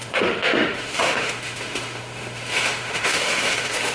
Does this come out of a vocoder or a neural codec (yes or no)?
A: yes